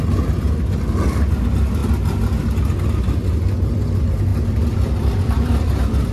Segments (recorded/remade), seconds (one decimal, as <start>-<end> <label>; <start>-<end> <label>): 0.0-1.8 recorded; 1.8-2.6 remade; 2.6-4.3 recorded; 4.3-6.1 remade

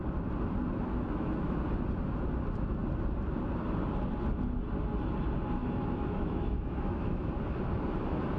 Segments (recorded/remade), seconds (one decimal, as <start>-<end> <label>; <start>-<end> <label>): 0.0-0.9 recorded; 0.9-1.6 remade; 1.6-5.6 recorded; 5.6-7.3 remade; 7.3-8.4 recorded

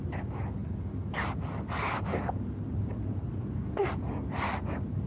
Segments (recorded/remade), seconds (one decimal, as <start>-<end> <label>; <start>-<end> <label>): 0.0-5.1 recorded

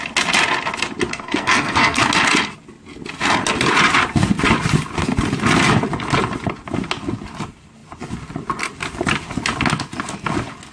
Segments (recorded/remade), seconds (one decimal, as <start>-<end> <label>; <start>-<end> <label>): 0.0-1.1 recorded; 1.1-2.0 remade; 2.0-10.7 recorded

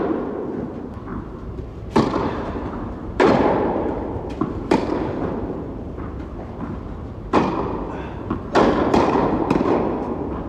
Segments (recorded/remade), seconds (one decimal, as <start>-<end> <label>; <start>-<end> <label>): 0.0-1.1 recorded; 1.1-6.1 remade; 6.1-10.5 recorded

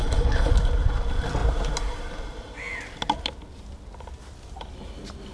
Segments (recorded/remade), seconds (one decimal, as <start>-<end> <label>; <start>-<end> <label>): 0.0-0.5 remade; 0.5-5.3 recorded

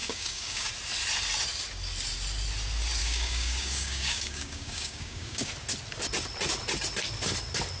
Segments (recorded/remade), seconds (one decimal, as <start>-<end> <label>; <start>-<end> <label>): 0.0-0.7 remade; 0.7-3.0 recorded; 3.0-5.5 remade; 5.5-7.8 recorded

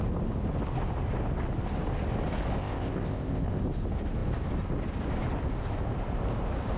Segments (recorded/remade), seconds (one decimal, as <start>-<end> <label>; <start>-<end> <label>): 0.0-2.6 recorded; 2.6-3.6 remade; 3.6-6.8 recorded